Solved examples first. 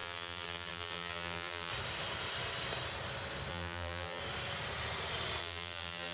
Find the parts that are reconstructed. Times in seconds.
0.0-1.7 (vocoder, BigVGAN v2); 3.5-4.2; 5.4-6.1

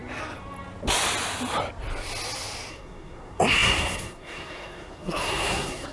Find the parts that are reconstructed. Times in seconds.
2.7-5.9 (codec, SNAC)

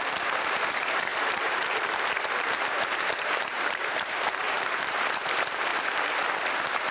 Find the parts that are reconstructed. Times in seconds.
0.0-5.7 (vocoder, BigVGAN v2); 6.5-6.9

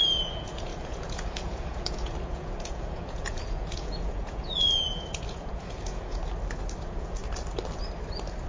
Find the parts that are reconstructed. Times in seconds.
0.0-6.2 (vocoder, Vocos); 6.8-7.2